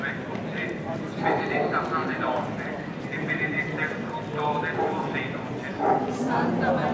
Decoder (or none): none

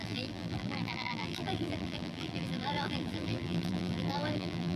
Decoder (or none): vocoder, BigVGAN v2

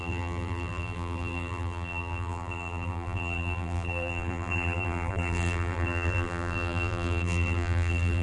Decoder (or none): vocoder, BigVGAN v2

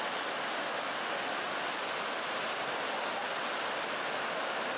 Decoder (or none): none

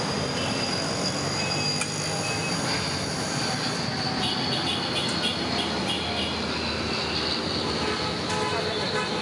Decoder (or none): none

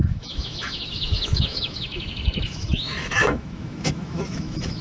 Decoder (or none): autoencoder, DAC-VAE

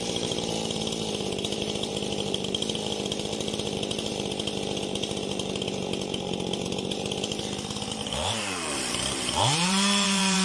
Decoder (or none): vocoder, BigVGAN v2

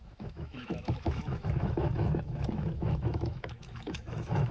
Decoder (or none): autoencoder, DAC-VAE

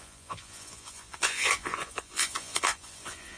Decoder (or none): vocoder, Vocos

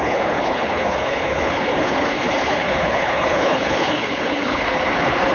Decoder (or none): codec, HILCodec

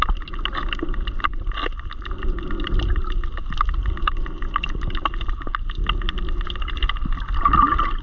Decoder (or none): none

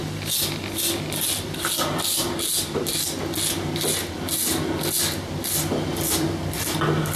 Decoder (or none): none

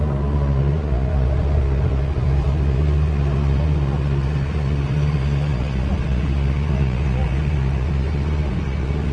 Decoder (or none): vocoder, Vocos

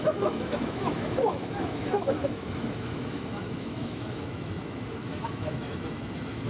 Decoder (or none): autoencoder, DAC-VAE